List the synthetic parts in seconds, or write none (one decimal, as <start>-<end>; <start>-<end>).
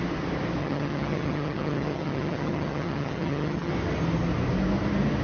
0.6-3.7